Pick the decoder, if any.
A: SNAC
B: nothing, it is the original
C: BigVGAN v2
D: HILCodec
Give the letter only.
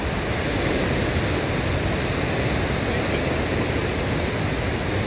B